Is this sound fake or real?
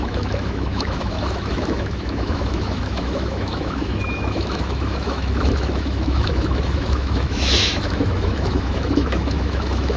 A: fake